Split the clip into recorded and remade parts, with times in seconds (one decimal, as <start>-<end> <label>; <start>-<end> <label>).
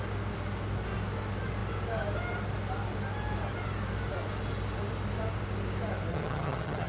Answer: 0.0-6.1 recorded; 6.1-6.9 remade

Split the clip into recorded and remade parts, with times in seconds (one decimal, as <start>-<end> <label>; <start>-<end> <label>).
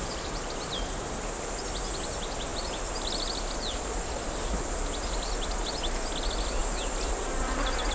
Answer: 0.0-7.9 recorded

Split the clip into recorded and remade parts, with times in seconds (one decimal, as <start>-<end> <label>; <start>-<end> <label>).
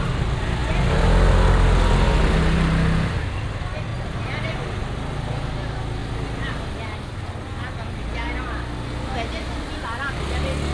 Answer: 0.0-10.7 recorded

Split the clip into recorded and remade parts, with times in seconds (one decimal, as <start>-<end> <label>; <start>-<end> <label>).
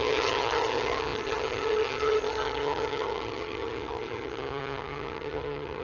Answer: 0.0-5.8 remade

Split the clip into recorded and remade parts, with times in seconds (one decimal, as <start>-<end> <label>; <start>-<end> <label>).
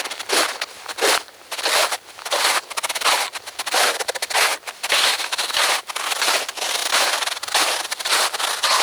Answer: 0.0-6.8 recorded; 6.8-7.7 remade; 7.7-8.8 recorded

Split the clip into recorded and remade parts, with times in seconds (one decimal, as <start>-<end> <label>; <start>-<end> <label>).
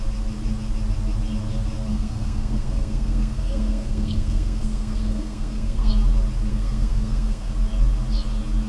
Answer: 0.0-1.9 recorded; 1.9-5.9 remade; 5.9-6.5 recorded; 6.5-7.5 remade; 7.5-8.7 recorded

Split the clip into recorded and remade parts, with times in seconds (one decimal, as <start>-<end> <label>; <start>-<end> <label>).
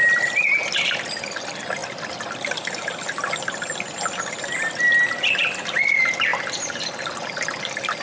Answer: 0.0-8.0 recorded